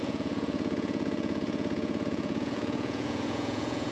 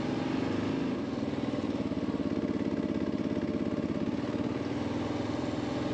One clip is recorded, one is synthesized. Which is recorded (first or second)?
second